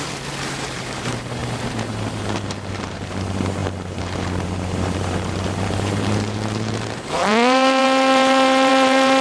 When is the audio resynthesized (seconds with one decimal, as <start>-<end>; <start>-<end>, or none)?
0.0-9.2